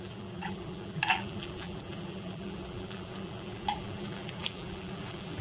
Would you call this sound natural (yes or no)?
no